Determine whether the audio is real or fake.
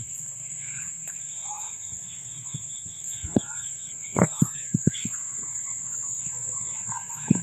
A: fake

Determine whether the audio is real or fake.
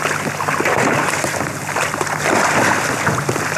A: real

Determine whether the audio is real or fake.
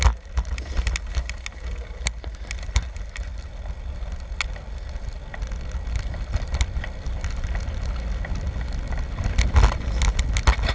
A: real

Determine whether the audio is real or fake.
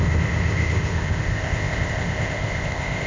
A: fake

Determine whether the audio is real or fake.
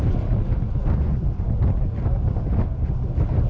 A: real